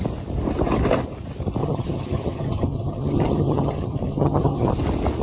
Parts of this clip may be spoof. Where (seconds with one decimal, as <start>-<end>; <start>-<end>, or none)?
1.6-4.7